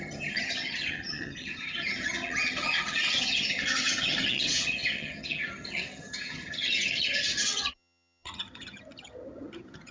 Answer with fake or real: fake